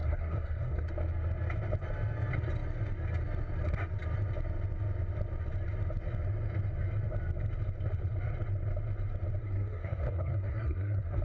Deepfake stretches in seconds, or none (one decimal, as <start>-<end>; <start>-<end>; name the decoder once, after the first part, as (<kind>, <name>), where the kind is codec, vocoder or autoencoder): 0.0-0.9 (codec, SNAC); 9.4-11.2